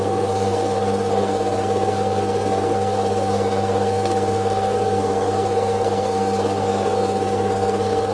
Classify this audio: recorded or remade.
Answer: remade